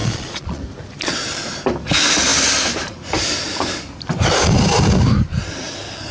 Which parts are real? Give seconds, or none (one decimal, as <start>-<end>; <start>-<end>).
0.6-6.1